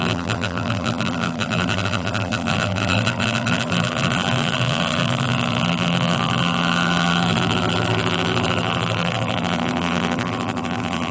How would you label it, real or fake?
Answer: fake